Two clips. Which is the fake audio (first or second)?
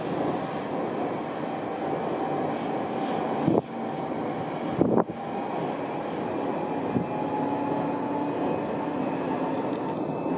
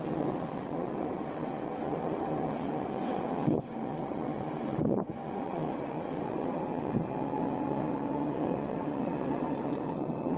second